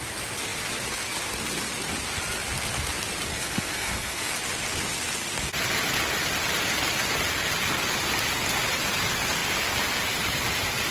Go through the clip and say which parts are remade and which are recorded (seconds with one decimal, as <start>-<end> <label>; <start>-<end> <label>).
0.0-3.3 recorded; 3.3-4.3 remade; 4.3-10.9 recorded